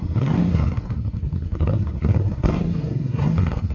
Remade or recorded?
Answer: remade